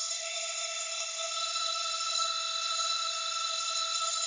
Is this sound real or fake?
fake